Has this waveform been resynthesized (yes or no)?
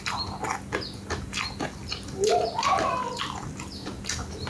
no